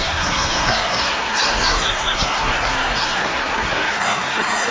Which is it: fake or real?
fake